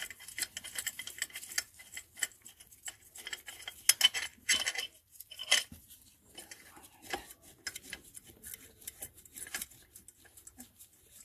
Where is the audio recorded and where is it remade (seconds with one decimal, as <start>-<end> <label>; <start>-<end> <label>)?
0.0-11.2 recorded